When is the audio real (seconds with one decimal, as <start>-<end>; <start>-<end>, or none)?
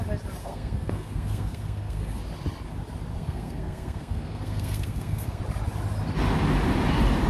0.0-0.4; 2.2-3.1; 5.4-7.3